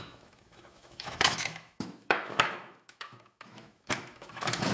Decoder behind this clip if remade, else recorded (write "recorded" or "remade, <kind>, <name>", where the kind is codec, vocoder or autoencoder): remade, autoencoder, DAC-VAE